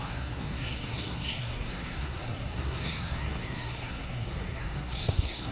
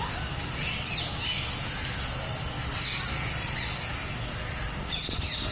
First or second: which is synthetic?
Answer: first